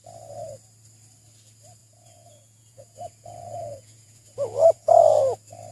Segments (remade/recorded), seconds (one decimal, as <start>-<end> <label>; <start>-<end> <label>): 0.0-1.8 recorded; 1.8-5.2 remade; 5.2-5.7 recorded